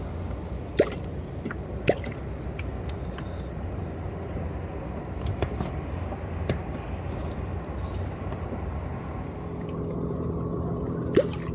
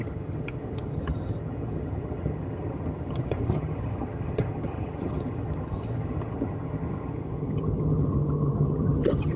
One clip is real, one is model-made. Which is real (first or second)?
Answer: first